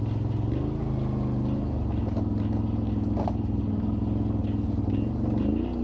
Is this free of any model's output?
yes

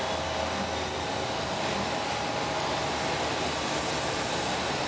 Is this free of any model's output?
yes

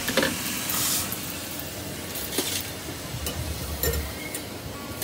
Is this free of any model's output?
yes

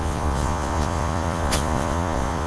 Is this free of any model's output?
no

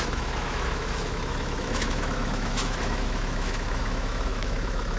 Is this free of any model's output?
no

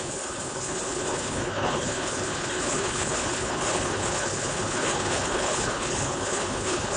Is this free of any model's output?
no